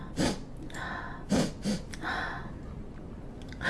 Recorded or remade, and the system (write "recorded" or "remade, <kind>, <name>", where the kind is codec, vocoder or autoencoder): recorded